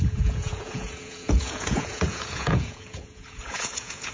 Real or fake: fake